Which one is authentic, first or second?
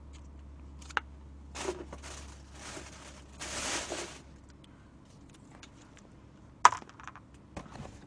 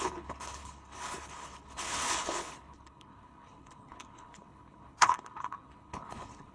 first